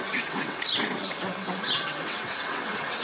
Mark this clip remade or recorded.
remade